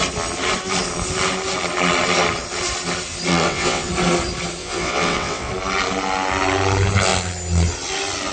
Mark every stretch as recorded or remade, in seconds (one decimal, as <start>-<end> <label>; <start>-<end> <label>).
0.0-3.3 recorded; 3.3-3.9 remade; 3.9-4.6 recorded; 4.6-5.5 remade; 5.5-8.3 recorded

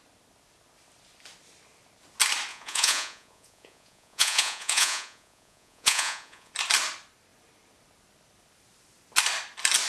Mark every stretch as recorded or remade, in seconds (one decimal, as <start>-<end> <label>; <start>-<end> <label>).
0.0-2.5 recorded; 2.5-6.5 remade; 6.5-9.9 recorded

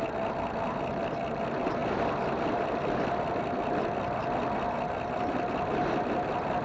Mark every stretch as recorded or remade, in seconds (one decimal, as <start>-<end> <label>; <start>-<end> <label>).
0.0-6.6 recorded

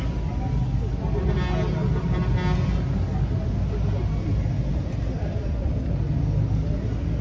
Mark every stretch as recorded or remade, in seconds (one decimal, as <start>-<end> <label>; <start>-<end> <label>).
0.0-7.2 recorded